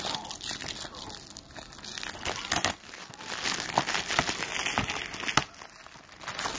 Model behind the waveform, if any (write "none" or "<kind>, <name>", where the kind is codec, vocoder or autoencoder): none